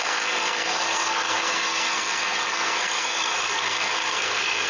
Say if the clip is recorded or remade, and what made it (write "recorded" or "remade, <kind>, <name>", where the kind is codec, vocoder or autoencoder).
remade, codec, SNAC